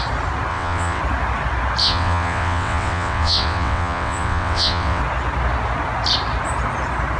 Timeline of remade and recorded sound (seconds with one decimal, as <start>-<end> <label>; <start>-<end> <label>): 0.0-0.5 recorded; 0.5-1.0 remade; 1.0-1.8 recorded; 1.8-5.0 remade; 5.0-7.2 recorded